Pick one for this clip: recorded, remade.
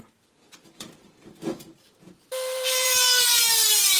remade